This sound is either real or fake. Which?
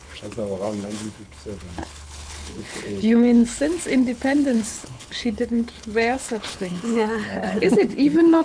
fake